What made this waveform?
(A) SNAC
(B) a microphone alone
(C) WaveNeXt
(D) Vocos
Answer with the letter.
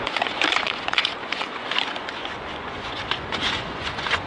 D